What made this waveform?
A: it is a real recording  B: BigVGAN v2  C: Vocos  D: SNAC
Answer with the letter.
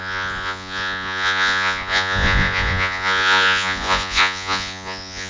C